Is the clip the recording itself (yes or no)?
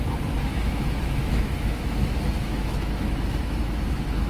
no